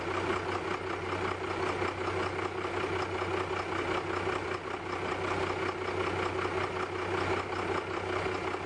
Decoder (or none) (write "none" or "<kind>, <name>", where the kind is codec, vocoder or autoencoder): none